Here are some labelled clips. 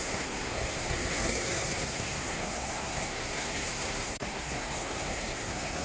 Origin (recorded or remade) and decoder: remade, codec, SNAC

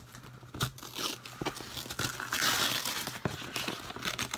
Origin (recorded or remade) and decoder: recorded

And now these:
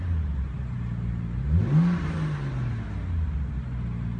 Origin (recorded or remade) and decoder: recorded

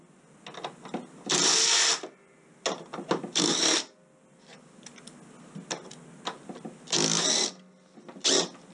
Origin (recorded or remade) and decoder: recorded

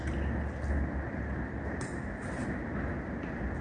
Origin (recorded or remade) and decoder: recorded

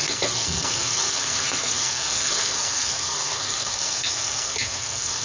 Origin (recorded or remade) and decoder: remade, codec, SNAC